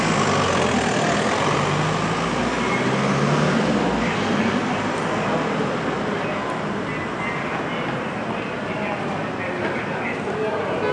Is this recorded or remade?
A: recorded